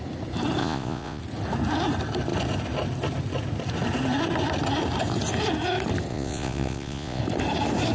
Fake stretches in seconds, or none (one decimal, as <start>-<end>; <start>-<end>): 0.6-1.2; 6.1-7.2